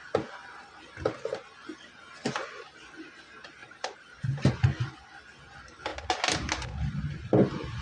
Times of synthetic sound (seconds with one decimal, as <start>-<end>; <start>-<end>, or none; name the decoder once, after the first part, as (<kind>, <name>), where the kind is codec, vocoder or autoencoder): 3.6-4.5 (vocoder, BigVGAN v2)